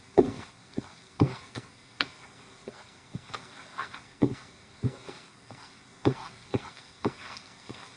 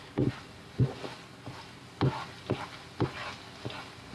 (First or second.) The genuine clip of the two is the second